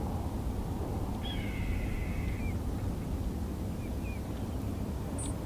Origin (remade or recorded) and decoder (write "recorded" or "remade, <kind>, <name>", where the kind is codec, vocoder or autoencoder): recorded